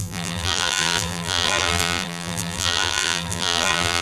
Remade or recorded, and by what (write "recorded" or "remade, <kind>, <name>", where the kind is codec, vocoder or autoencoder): remade, vocoder, BigVGAN v2